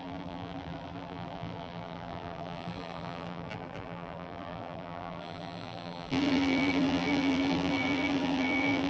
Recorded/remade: remade